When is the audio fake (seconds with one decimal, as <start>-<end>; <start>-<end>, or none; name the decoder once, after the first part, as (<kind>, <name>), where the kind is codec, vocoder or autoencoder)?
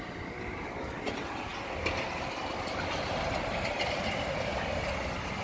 none